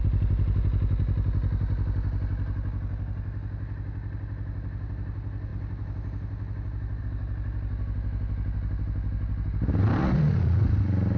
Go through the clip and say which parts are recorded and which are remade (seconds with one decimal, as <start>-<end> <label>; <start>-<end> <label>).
0.0-10.0 recorded; 10.0-10.6 remade; 10.6-11.2 recorded